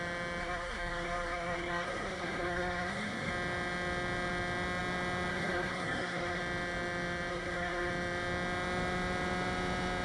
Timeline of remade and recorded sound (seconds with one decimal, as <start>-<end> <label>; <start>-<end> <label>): 0.0-0.4 recorded; 0.4-3.3 remade; 3.3-5.3 recorded; 5.3-6.4 remade; 6.4-7.3 recorded; 7.3-7.9 remade; 7.9-10.0 recorded